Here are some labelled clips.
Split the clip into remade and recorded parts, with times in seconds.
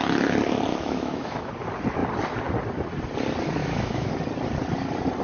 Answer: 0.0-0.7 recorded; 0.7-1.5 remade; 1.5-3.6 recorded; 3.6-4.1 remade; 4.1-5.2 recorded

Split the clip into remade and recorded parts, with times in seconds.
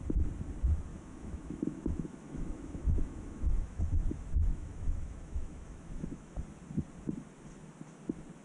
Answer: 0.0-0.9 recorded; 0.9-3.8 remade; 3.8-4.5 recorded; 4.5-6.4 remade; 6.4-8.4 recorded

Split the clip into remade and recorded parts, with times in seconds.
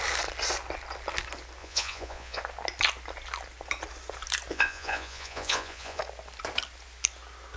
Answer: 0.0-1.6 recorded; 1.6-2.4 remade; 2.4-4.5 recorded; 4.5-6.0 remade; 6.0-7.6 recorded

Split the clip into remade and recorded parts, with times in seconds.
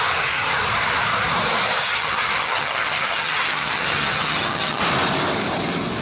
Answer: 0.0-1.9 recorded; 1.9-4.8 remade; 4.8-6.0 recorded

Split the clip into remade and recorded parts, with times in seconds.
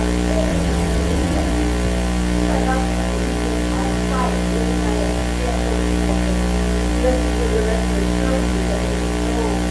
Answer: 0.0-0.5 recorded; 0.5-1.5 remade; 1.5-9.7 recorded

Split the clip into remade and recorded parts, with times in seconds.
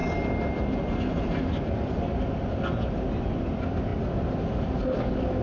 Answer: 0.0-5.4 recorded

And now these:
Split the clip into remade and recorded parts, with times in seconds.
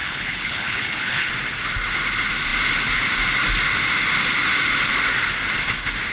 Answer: 0.0-1.3 remade; 1.3-6.1 recorded